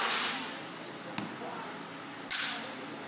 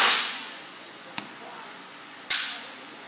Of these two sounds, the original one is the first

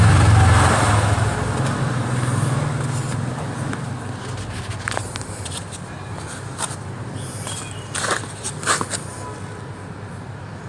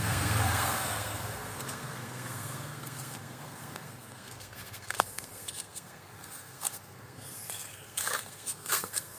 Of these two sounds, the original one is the first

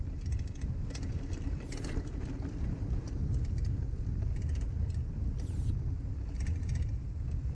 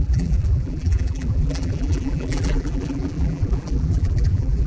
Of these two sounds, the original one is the first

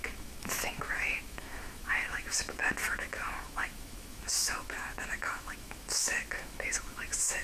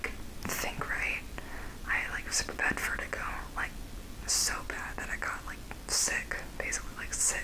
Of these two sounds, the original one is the second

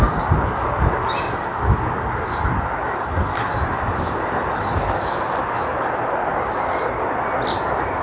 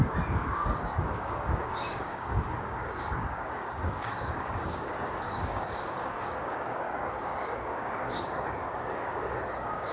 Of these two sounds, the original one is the first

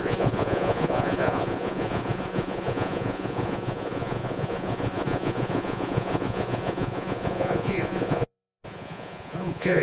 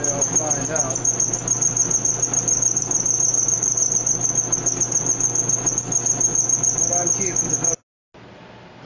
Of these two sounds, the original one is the second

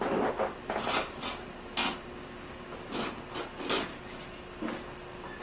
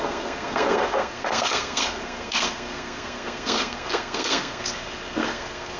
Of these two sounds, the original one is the first